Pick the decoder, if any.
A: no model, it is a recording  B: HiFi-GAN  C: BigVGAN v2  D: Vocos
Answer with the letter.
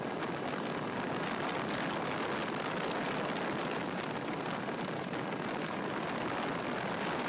A